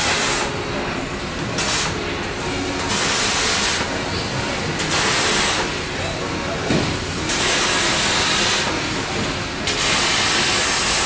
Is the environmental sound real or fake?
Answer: real